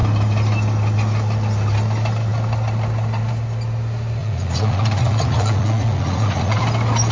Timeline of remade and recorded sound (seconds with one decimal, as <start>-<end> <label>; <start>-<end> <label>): 0.0-4.2 recorded; 4.2-6.6 remade; 6.6-7.1 recorded

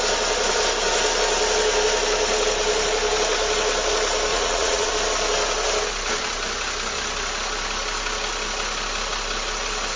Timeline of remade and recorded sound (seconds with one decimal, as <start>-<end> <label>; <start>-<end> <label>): 0.0-4.3 recorded; 4.3-4.9 remade; 4.9-10.0 recorded

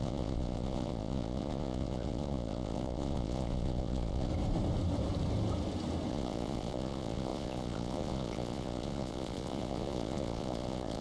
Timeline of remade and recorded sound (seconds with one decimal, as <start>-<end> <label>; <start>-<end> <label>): 0.0-4.3 remade; 4.3-6.1 recorded; 6.1-11.0 remade

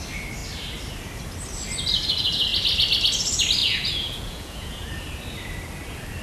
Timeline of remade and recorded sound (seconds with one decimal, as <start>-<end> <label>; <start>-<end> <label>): 0.0-3.6 recorded; 3.6-4.9 remade; 4.9-6.2 recorded

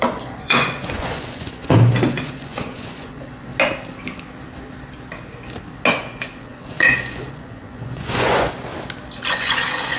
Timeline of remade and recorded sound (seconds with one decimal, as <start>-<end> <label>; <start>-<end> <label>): 0.0-3.5 remade; 3.5-5.9 recorded; 5.9-8.7 remade; 8.7-9.3 recorded; 9.3-10.0 remade